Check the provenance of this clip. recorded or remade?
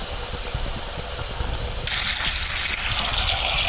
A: recorded